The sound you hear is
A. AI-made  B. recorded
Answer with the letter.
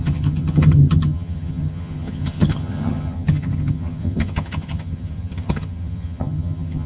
A